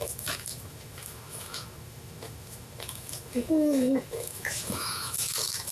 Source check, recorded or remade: remade